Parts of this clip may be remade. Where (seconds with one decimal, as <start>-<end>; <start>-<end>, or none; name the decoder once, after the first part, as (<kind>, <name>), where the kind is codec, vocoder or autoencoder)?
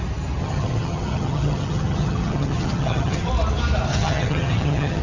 0.4-3.3 (vocoder, HiFi-GAN); 3.9-5.0